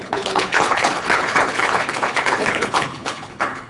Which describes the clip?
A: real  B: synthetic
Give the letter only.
B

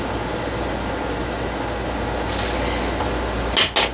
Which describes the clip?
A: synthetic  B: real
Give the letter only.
B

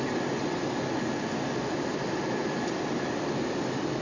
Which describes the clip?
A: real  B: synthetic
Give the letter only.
A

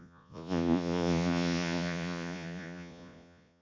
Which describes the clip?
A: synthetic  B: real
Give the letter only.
A